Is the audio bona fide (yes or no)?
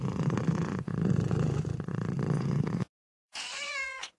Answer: no